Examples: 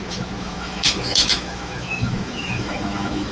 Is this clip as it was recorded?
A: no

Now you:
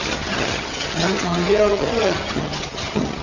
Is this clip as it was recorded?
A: no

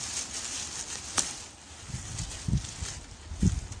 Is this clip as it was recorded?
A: yes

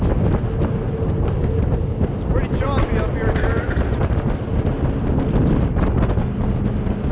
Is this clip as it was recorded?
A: yes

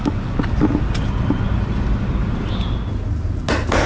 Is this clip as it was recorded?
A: yes